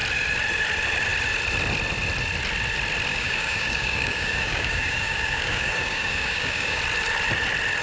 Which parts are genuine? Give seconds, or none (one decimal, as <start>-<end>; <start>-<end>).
0.0-3.1; 6.8-7.8